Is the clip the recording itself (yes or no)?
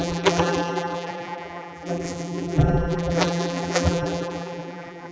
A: no